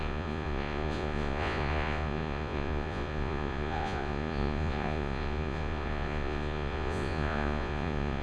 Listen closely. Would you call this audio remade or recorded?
remade